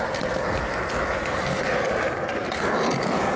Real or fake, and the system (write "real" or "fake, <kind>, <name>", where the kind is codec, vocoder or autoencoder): real